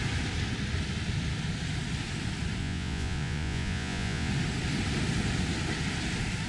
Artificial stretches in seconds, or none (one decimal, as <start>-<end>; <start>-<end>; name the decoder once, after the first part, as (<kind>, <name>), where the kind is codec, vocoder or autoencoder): 2.6-4.3 (vocoder, Vocos)